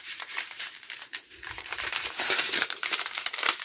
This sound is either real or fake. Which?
fake